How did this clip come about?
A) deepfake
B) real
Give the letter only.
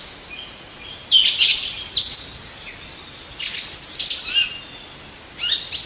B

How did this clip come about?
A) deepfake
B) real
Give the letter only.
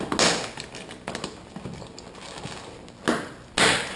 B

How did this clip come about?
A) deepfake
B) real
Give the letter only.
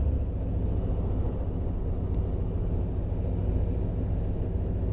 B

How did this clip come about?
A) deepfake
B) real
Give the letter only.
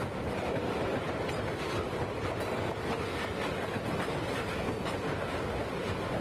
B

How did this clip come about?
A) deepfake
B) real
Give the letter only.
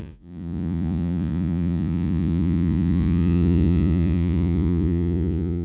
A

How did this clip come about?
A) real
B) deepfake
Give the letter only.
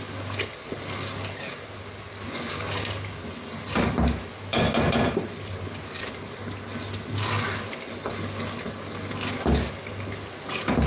A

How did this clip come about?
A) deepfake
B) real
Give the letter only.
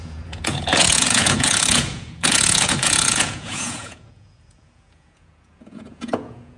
A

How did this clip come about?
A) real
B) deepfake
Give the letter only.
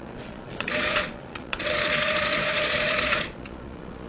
B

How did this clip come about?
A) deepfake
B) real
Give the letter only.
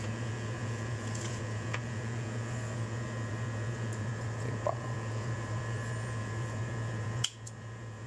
A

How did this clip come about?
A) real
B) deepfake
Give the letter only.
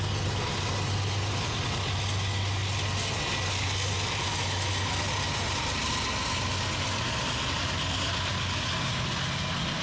A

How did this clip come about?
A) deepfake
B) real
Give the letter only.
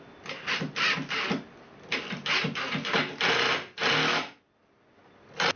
B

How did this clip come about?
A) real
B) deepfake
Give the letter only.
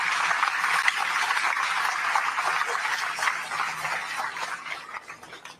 A